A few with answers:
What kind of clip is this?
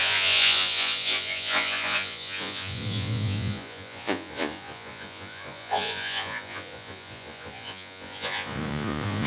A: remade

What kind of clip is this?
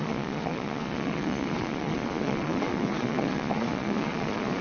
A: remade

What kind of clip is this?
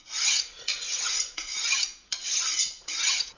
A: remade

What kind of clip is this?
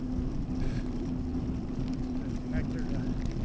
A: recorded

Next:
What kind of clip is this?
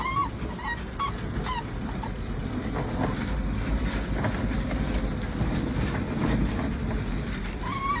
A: recorded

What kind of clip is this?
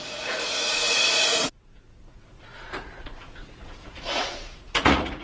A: remade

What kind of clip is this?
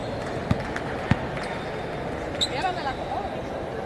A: recorded